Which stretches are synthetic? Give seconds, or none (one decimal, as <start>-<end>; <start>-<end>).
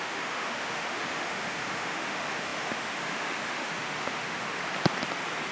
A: 0.0-4.6